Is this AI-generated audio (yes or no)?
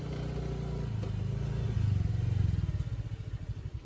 no